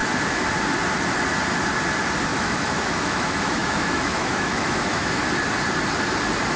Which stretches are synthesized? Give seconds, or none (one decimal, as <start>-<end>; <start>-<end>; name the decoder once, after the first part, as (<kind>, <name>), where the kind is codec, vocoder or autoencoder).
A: 2.3-5.2 (autoencoder, DAC-VAE)